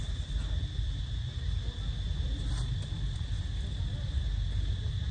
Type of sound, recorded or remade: recorded